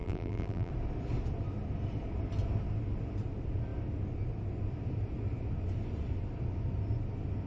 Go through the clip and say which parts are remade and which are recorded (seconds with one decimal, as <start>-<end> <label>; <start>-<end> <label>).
0.0-0.7 remade; 0.7-7.5 recorded